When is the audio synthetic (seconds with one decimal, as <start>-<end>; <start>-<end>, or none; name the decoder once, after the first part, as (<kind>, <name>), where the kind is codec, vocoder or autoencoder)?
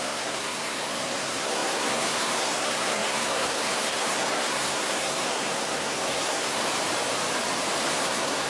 0.0-6.6 (codec, SNAC); 7.9-8.5